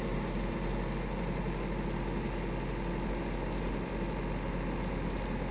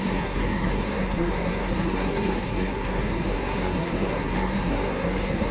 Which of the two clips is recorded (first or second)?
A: first